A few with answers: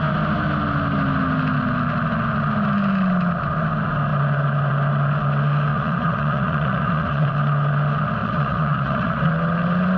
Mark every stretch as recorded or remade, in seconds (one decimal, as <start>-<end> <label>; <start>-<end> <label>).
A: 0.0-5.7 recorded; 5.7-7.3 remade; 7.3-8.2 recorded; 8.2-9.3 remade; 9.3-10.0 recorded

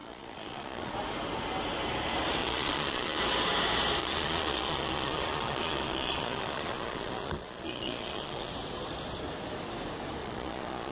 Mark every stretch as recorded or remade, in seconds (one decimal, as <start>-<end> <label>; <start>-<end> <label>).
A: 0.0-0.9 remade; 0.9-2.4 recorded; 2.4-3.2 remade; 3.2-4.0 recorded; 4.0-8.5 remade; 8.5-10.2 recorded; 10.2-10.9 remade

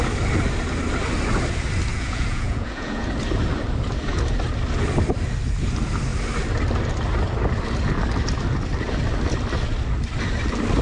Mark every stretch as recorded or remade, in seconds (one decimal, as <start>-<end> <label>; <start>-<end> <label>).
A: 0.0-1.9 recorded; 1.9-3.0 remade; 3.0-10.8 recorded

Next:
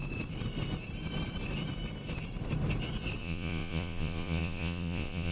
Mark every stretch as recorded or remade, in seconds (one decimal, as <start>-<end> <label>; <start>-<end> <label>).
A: 0.0-3.2 recorded; 3.2-5.3 remade